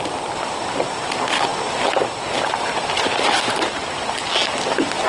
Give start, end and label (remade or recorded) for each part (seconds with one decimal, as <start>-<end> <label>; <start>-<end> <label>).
0.0-5.1 recorded